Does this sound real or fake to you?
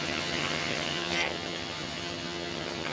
fake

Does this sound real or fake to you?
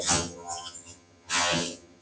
fake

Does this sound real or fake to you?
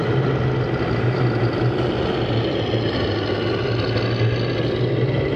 real